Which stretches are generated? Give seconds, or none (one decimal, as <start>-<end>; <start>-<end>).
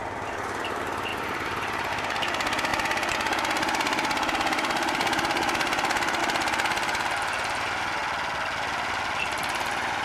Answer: 2.7-6.2